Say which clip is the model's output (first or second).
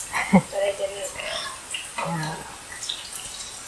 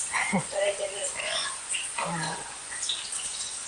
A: second